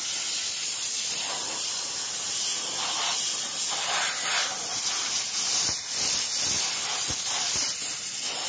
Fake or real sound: fake